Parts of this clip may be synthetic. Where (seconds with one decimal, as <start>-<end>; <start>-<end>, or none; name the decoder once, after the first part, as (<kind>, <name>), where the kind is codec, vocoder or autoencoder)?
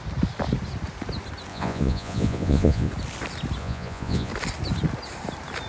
1.5-2.9 (vocoder, Vocos); 3.6-4.3